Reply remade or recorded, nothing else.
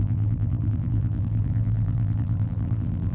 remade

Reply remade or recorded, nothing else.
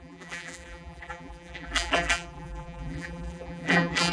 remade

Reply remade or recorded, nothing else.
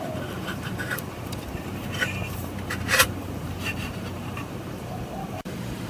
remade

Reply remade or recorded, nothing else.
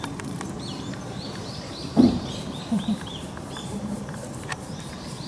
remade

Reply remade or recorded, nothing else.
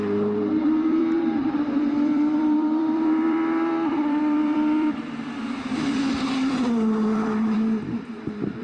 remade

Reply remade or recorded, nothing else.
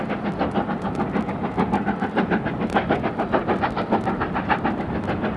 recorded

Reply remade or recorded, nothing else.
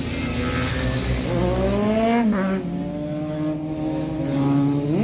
recorded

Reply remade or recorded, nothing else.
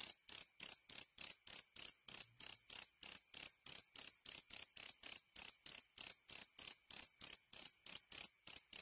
recorded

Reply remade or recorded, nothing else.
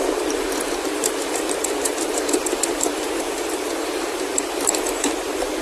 remade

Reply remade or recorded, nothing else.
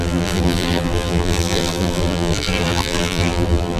remade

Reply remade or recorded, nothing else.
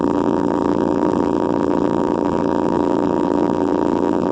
remade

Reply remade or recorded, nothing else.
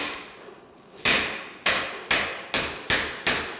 recorded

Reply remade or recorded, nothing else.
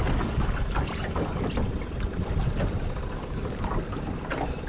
recorded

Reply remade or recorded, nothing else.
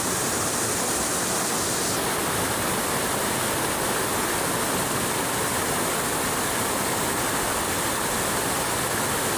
recorded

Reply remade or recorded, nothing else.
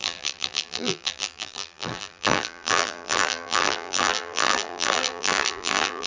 remade